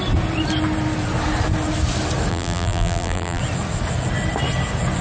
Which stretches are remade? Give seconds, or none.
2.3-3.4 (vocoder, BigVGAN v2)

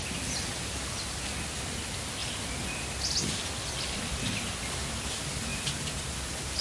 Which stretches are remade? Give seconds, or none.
none

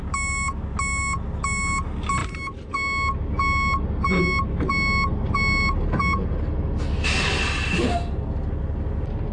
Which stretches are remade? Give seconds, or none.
none

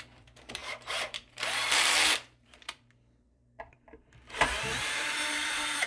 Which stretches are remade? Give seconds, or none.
0.0-5.9 (vocoder, BigVGAN v2)

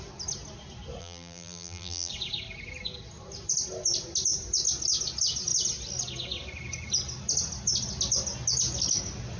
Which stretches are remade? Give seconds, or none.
1.0-2.1 (vocoder, BigVGAN v2)